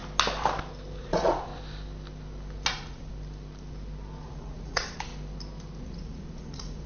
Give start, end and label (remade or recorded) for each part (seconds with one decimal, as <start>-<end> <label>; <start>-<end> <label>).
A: 0.0-1.0 recorded; 1.0-1.5 remade; 1.5-2.7 recorded; 2.7-3.1 remade; 3.1-4.2 recorded; 4.2-5.1 remade; 5.1-5.8 recorded; 5.8-6.9 remade